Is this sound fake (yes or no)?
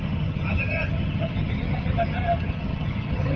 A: yes